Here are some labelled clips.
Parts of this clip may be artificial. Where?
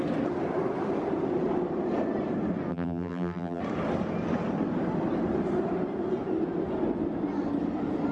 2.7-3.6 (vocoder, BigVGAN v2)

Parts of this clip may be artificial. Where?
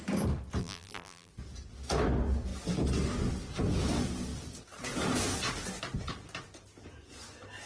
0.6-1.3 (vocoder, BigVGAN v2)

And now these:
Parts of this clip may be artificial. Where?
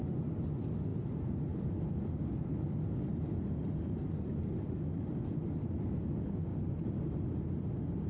6.5-7.0 (vocoder, BigVGAN v2)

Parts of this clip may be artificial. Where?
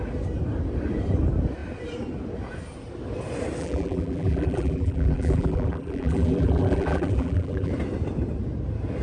3.6-7.7 (vocoder, BigVGAN v2)